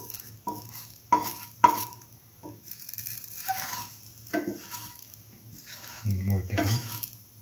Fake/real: fake